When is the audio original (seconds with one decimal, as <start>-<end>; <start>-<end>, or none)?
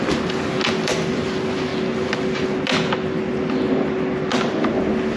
0.0-5.2